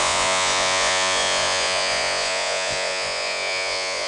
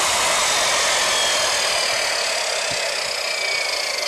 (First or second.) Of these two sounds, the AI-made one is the first